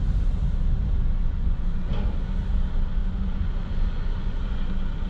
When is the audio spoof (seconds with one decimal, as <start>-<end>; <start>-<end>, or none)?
1.2-1.9; 3.0-4.5